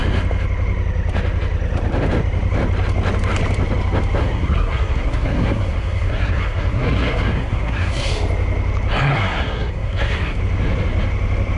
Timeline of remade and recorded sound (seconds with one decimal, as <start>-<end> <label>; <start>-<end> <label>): 0.0-4.2 recorded; 4.2-8.1 remade; 8.1-9.1 recorded; 9.1-10.4 remade; 10.4-11.6 recorded